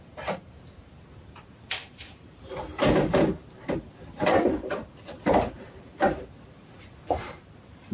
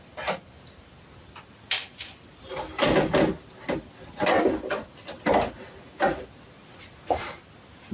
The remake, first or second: first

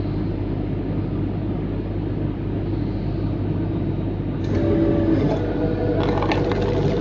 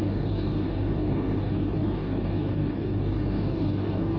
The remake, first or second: second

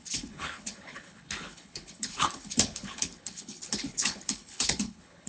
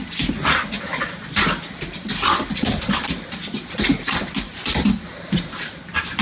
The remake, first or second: first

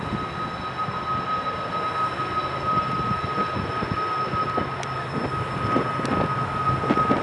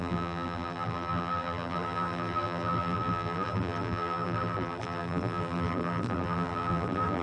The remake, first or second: second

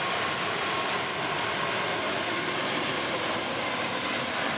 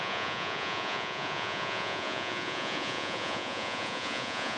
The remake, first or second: second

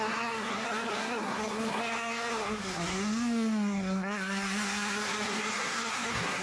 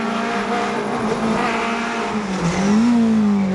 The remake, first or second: first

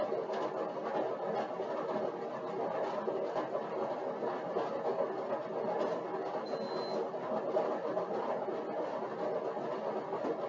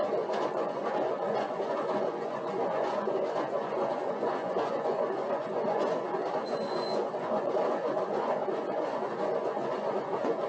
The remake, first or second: second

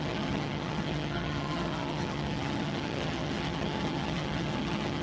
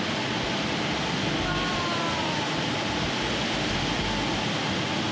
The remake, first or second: first